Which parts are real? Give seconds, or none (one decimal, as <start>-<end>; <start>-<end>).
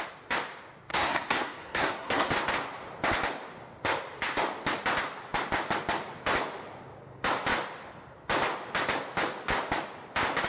0.0-0.9; 2.3-10.5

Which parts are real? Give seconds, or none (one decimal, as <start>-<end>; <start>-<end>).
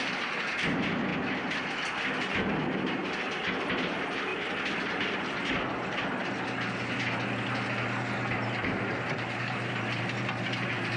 1.1-2.3; 3.0-3.6; 4.3-4.8; 6.2-8.4